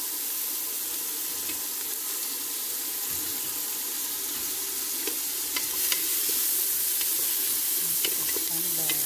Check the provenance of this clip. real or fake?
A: real